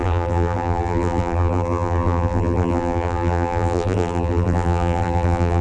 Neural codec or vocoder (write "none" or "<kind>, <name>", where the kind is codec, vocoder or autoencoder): vocoder, BigVGAN v2